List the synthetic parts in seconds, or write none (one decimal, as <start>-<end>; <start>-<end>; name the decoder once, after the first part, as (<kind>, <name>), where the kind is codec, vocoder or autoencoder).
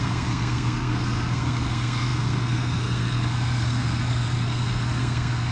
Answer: 0.0-5.5 (codec, SNAC)